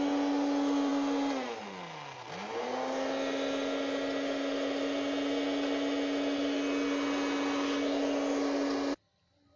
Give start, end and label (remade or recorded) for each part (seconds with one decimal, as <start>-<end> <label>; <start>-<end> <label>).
0.0-9.6 recorded